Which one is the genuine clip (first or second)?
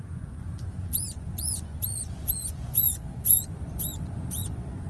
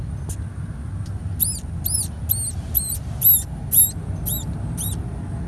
second